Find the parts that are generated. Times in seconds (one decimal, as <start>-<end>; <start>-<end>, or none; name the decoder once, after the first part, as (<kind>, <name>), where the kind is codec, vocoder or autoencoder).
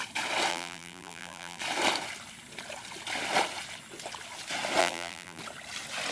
0.5-1.6 (vocoder, BigVGAN v2); 4.8-5.4